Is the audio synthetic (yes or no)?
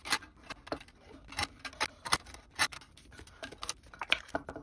no